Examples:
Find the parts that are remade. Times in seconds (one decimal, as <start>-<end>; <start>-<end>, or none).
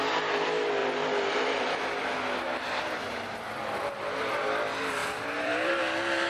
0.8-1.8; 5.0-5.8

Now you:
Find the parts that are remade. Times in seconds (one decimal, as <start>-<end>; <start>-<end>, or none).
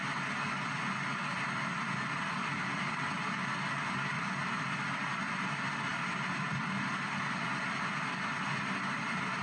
none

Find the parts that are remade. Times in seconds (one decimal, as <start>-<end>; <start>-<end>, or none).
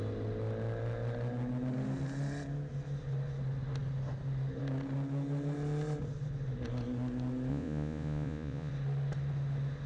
7.5-8.7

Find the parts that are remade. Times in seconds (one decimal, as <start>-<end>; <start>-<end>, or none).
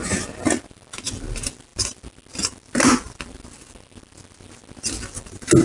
none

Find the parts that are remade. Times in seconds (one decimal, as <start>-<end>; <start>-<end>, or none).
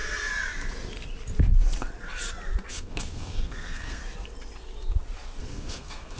2.7-4.0; 5.4-6.2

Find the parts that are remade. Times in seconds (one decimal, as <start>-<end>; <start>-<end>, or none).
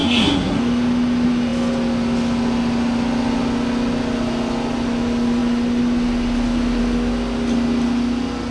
0.0-0.6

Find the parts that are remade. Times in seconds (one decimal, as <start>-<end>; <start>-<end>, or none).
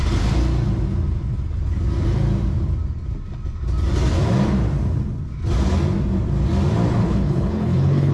7.0-8.1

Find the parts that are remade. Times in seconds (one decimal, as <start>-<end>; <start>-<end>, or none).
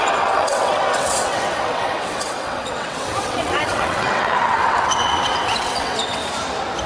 0.0-6.2